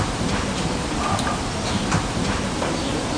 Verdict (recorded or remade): recorded